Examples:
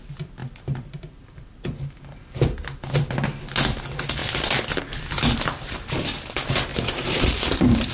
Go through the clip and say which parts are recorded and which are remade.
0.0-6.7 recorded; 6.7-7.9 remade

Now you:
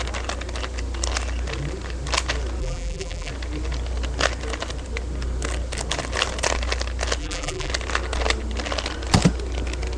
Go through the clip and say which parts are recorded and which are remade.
0.0-2.6 recorded; 2.6-3.3 remade; 3.3-7.2 recorded; 7.2-7.7 remade; 7.7-10.0 recorded

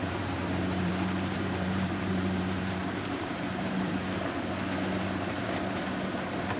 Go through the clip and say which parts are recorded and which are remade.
0.0-4.0 remade; 4.0-6.6 recorded